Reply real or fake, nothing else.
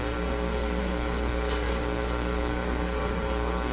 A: fake